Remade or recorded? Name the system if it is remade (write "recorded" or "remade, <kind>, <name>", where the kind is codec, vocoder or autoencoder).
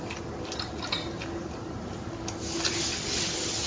recorded